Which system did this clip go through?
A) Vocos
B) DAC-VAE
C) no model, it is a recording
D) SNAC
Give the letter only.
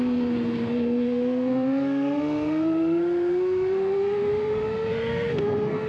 D